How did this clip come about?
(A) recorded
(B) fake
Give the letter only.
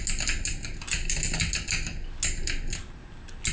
A